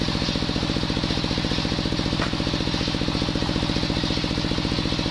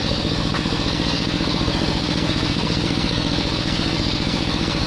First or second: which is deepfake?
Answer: second